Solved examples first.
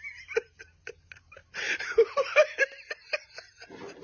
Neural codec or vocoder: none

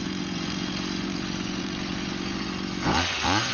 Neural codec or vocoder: vocoder, Vocos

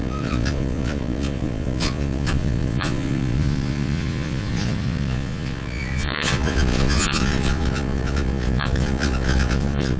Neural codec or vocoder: vocoder, Vocos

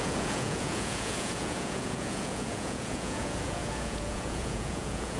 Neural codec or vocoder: vocoder, Vocos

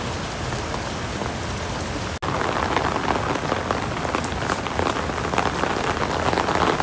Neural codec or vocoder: none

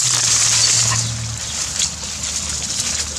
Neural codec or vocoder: none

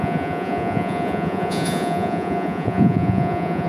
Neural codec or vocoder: vocoder, Vocos